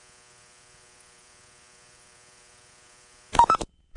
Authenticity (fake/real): fake